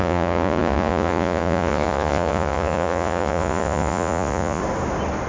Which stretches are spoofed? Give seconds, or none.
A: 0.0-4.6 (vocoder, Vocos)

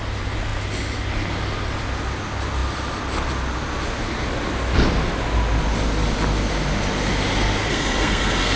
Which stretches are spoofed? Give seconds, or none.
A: 7.7-8.6 (codec, SNAC)